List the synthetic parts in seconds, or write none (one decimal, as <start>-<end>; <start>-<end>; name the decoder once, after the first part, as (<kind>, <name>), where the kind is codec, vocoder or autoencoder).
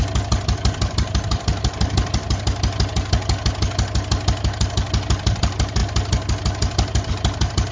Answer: none